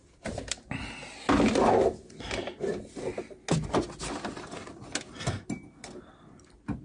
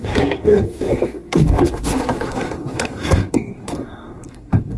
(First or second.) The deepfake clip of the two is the second